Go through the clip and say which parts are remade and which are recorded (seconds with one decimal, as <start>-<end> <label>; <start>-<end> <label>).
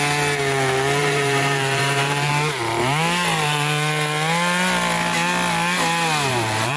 0.0-1.0 recorded; 1.0-2.3 remade; 2.3-6.3 recorded; 6.3-6.8 remade